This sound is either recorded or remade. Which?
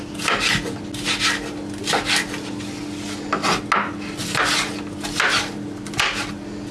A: recorded